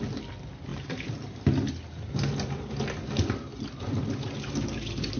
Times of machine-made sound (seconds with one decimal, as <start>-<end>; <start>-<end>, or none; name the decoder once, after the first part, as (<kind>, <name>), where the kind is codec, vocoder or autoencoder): none